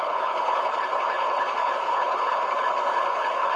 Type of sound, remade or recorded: remade